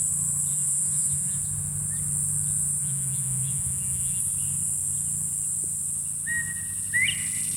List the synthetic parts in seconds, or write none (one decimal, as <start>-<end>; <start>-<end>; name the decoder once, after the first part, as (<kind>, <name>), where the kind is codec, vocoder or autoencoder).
0.5-1.4 (vocoder, Vocos); 2.8-4.2